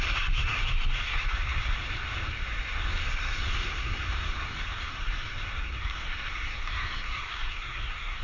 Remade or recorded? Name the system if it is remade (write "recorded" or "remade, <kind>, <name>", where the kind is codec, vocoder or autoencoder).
remade, codec, SNAC